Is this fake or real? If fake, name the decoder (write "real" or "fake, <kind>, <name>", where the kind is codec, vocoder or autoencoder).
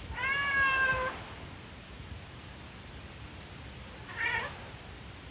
real